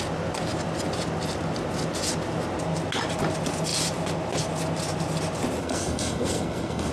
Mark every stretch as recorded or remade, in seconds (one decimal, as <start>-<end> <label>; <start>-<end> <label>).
0.0-5.6 recorded; 5.6-6.9 remade